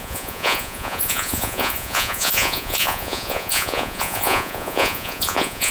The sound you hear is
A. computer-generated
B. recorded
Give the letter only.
A